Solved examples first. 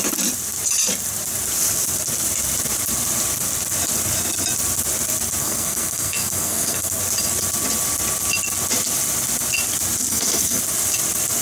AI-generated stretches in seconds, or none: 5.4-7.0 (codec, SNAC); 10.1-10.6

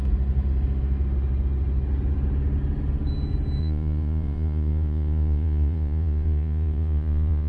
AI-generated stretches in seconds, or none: 3.6-7.5 (vocoder, Vocos)

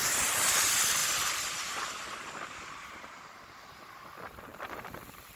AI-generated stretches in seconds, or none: 4.5-5.4 (vocoder, BigVGAN v2)

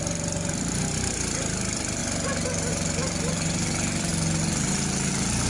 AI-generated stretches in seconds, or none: 0.0-2.0 (vocoder, BigVGAN v2); 2.7-4.1; 5.1-5.5

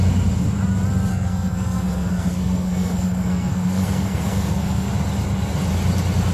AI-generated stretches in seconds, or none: 1.1-4.9 (codec, SNAC)

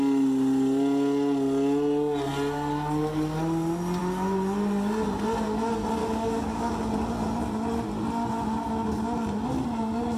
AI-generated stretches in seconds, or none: 6.0-6.7 (codec, DAC)